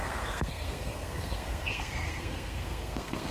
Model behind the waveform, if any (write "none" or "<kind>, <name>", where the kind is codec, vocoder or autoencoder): codec, SNAC